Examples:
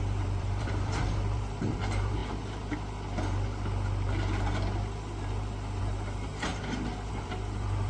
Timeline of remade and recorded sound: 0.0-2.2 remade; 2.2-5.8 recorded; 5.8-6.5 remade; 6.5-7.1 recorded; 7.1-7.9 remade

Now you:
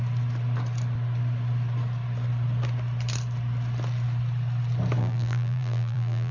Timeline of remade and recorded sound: 0.0-5.0 recorded; 5.0-6.3 remade

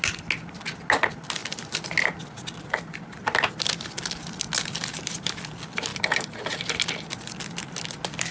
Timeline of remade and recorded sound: 0.0-4.9 recorded; 4.9-5.4 remade; 5.4-5.9 recorded; 5.9-6.6 remade; 6.6-8.3 recorded

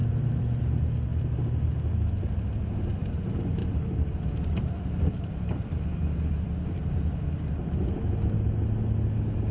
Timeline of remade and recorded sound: 0.0-0.6 remade; 0.6-3.6 recorded; 3.6-7.7 remade; 7.7-9.5 recorded